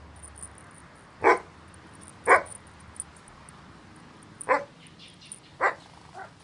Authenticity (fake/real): real